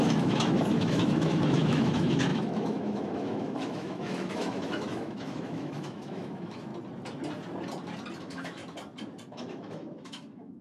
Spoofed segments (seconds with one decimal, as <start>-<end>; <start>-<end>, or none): 0.0-6.7; 8.2-8.6; 9.3-10.6